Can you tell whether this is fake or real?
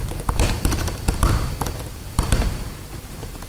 fake